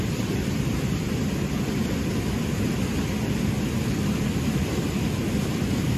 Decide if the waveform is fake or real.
real